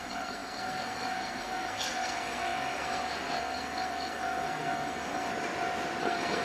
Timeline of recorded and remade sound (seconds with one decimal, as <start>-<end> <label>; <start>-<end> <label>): 0.0-5.3 remade; 5.3-6.0 recorded; 6.0-6.4 remade